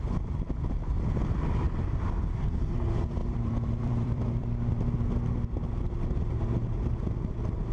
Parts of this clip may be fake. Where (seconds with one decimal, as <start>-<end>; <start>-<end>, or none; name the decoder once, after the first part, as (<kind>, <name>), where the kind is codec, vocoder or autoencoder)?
3.2-4.5 (vocoder, BigVGAN v2)

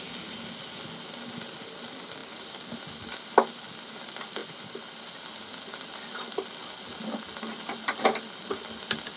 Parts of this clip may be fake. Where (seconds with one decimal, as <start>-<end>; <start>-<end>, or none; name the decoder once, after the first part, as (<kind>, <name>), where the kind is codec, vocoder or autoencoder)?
none

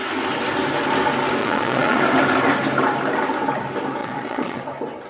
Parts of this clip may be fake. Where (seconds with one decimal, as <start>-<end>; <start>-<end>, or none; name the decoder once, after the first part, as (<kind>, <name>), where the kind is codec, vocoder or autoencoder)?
1.4-2.0 (vocoder, Vocos); 4.0-4.6

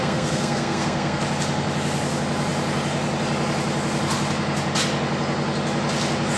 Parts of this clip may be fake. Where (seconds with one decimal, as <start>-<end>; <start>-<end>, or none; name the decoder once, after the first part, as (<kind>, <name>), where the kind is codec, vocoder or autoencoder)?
0.0-1.2 (codec, SNAC)

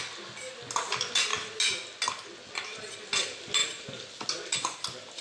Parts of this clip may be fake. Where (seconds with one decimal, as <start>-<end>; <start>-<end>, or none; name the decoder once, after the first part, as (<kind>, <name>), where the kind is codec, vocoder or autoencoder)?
none